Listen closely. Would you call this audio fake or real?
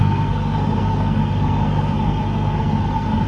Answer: fake